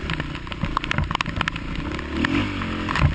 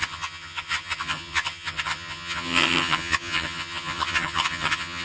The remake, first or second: second